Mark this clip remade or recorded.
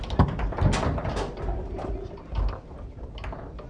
recorded